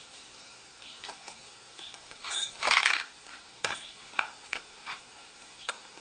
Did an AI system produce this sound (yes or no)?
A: yes